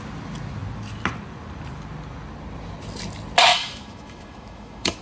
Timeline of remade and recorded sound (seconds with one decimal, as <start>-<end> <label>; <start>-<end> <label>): 0.0-3.5 recorded; 3.5-5.0 remade